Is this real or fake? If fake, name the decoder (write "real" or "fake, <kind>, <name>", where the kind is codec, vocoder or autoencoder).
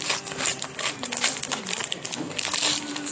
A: real